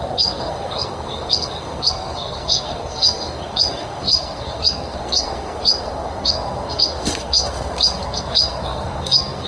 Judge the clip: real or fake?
fake